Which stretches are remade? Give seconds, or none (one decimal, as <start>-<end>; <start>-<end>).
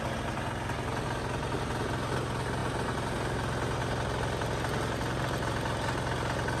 none